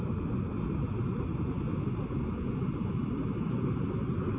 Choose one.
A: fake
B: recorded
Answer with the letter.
B